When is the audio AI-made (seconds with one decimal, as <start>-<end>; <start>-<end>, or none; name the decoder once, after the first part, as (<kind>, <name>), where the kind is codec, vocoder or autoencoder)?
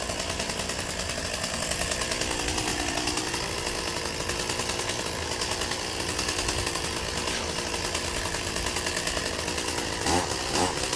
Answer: none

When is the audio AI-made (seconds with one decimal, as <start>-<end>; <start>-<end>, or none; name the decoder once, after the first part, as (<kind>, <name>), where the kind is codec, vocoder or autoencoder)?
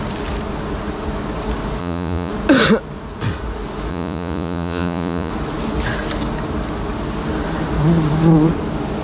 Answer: 1.8-2.3 (vocoder, Vocos); 3.9-5.3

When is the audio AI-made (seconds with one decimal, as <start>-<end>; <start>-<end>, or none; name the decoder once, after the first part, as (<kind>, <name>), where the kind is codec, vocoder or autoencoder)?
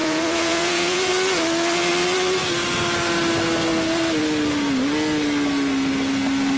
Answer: 0.0-1.1 (vocoder, Vocos)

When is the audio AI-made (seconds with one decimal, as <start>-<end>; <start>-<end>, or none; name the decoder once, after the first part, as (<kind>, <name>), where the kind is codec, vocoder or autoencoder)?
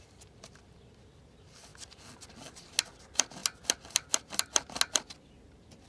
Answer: none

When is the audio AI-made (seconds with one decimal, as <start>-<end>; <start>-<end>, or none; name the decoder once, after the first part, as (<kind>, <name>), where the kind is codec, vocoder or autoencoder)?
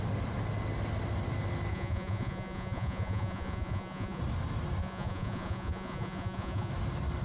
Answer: 1.7-4.2 (vocoder, Vocos); 4.8-6.7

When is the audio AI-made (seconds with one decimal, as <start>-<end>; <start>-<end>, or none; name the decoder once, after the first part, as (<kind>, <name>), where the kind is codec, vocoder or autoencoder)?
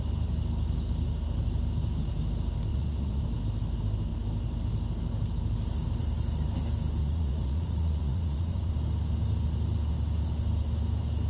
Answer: 2.7-3.2 (vocoder, Vocos); 7.0-8.7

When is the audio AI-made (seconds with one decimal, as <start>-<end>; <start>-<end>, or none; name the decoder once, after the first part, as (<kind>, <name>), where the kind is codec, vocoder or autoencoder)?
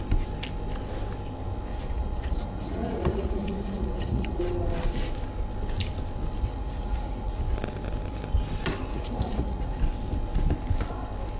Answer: 1.7-4.4 (vocoder, Vocos); 6.5-7.4; 8.9-9.8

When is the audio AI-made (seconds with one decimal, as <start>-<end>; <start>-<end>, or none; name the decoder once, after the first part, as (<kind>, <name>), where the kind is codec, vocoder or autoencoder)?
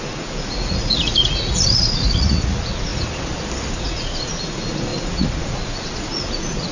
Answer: 0.0-2.9 (vocoder, Vocos); 3.7-6.7